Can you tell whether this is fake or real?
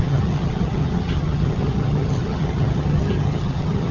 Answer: fake